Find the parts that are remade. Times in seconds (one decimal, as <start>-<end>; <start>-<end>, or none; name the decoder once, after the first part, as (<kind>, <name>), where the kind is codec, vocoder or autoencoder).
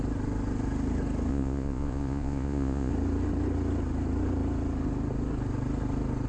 1.3-2.9 (vocoder, Vocos)